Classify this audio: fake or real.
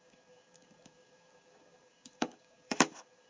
fake